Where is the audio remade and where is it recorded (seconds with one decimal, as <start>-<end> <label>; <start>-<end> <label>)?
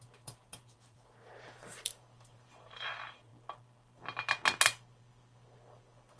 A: 0.0-3.3 remade; 3.3-6.2 recorded